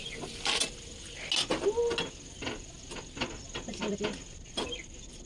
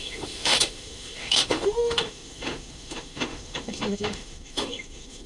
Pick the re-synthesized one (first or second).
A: second